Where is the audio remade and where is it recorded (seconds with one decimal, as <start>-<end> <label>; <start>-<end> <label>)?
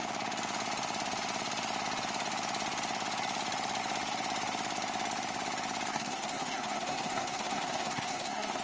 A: 0.0-5.9 recorded; 5.9-8.6 remade